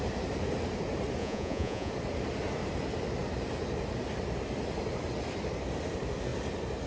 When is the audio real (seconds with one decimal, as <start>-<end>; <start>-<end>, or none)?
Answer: 0.0-1.2; 1.9-6.9

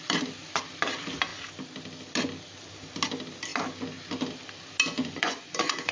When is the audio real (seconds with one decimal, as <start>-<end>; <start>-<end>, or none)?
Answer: 0.0-5.0

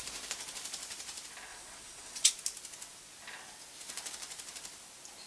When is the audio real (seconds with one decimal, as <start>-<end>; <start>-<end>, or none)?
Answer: 0.0-1.5; 2.3-5.3

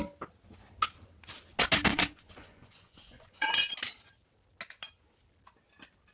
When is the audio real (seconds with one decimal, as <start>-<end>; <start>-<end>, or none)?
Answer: 0.0-1.9; 3.7-6.1

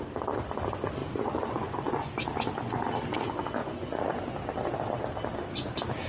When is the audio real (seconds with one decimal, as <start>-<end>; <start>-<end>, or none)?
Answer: 0.0-1.0; 2.1-3.6; 4.2-6.1

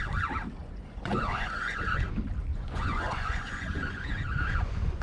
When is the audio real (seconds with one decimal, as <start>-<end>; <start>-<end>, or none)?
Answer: 0.0-0.6; 1.8-2.5